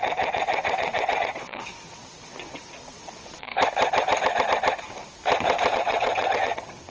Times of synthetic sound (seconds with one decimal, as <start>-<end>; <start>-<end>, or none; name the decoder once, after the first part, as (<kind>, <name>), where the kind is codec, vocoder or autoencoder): 0.0-3.5 (vocoder, WaveNeXt); 5.7-6.9